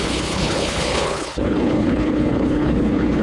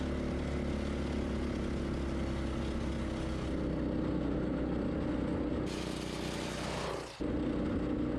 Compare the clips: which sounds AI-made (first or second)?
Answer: first